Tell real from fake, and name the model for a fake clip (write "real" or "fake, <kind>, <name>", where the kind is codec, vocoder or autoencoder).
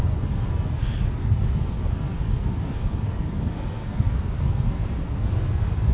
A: fake, codec, SNAC